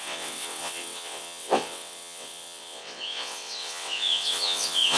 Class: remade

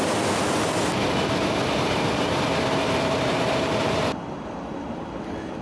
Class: remade